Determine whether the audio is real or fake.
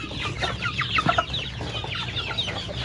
real